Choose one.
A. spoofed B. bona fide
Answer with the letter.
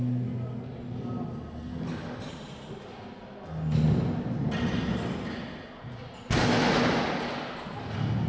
B